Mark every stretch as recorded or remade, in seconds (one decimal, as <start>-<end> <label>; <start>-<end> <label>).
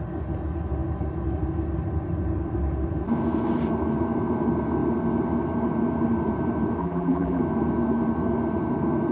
0.0-6.8 recorded; 6.8-7.4 remade; 7.4-9.1 recorded